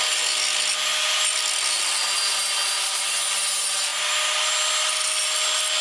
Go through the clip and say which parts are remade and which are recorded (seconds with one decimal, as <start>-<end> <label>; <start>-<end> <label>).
0.0-5.8 recorded